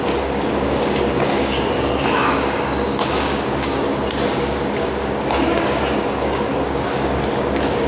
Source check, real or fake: fake